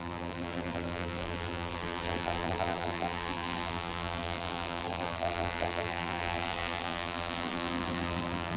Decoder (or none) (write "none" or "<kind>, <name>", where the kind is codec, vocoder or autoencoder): vocoder, BigVGAN v2